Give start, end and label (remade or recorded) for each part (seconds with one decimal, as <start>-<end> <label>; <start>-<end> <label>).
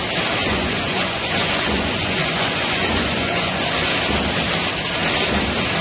0.0-0.4 recorded; 0.4-3.9 remade; 3.9-5.8 recorded